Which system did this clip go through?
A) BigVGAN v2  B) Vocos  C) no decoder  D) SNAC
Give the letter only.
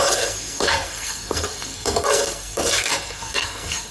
D